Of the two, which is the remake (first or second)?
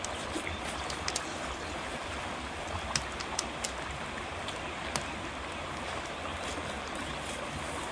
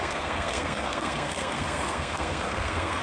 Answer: second